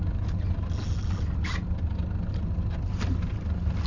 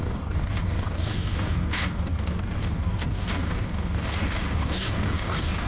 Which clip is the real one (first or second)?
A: first